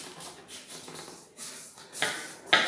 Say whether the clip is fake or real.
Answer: real